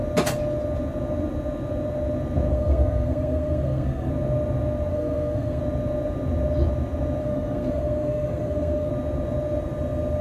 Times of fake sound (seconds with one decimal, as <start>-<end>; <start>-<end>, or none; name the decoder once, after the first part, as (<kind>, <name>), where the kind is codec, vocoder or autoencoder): 2.5-4.1 (codec, SNAC); 4.9-5.6; 7.2-8.9